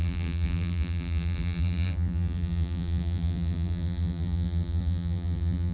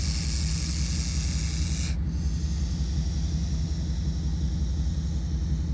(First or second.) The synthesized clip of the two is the first